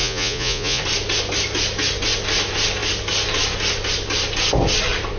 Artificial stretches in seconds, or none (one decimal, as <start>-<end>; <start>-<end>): 0.0-0.8